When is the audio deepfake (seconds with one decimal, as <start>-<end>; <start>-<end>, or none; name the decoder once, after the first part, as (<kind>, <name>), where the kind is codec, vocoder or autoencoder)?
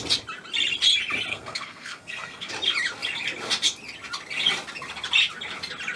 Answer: 1.3-2.5 (codec, SNAC)